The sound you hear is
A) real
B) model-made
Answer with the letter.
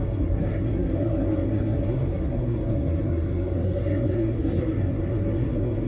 B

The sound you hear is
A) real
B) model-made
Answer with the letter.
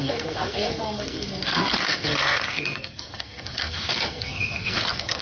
B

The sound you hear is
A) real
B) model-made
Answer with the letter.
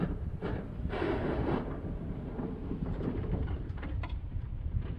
B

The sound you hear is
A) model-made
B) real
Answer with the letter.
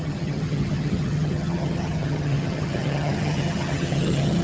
A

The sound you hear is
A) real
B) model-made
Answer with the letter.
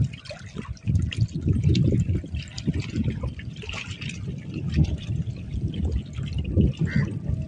A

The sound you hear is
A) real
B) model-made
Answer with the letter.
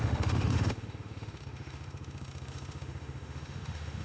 B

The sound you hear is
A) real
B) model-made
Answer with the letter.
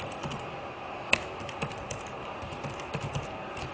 A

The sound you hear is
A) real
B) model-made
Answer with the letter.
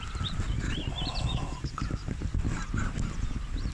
A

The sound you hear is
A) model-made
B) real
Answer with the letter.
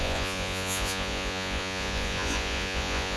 A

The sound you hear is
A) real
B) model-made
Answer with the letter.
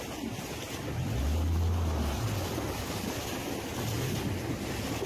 A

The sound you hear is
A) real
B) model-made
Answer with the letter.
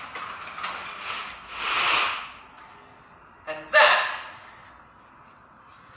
A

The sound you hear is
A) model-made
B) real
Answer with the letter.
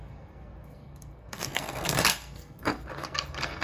A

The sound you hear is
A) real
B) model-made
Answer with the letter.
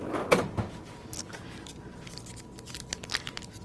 B